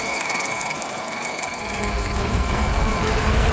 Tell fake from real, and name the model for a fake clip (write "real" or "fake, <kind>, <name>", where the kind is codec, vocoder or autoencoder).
fake, codec, SNAC